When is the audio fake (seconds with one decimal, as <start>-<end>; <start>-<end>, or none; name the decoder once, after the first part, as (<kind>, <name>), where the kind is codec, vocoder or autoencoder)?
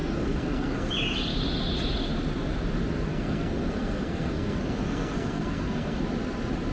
0.0-0.9 (codec, SNAC); 3.1-6.0